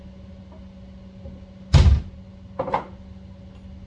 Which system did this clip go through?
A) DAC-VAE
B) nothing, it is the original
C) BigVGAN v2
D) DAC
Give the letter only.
B